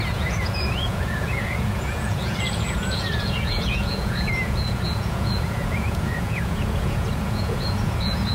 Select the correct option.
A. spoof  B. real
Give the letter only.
A